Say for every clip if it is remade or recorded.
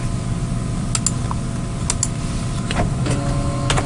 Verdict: recorded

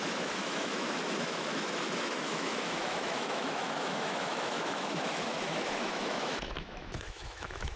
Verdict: remade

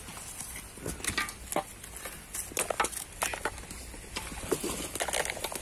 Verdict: recorded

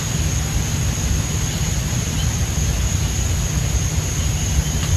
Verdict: recorded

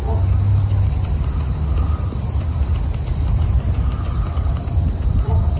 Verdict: recorded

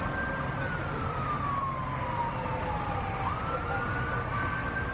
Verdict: recorded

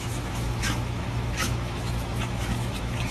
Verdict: remade